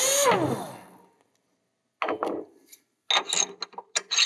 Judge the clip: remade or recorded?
recorded